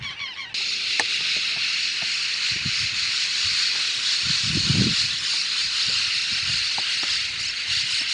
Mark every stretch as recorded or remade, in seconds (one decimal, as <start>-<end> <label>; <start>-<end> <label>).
0.0-8.1 recorded